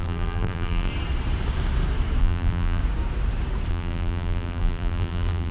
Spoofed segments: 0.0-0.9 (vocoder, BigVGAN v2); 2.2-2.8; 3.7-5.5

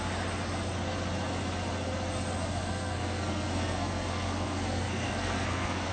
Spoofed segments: 2.4-5.9 (codec, SNAC)